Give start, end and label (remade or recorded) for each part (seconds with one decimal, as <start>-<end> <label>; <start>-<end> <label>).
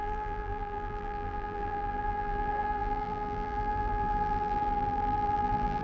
0.0-5.8 remade